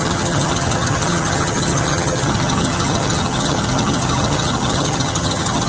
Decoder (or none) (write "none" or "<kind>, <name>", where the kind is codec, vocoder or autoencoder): vocoder, HiFi-GAN